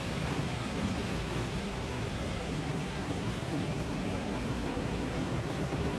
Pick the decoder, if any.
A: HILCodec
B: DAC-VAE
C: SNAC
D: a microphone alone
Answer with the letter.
C